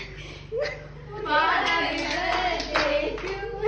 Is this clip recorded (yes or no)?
yes